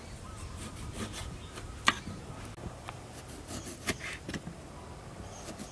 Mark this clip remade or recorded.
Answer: recorded